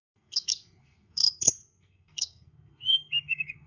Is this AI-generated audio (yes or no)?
yes